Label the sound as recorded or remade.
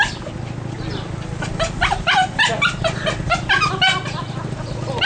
recorded